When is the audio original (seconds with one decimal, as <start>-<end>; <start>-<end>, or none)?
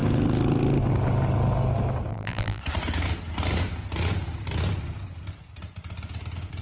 0.0-2.1; 2.6-6.6